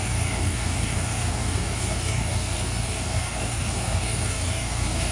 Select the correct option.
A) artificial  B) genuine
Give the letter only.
A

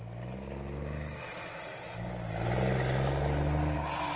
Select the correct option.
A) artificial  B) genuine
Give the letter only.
B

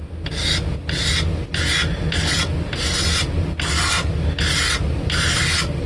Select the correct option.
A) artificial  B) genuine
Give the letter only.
B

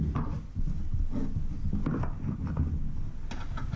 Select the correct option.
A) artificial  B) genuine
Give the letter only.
B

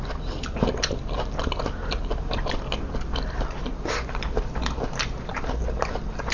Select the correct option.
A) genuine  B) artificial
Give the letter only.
A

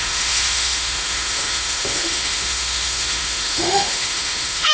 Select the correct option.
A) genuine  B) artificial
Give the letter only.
B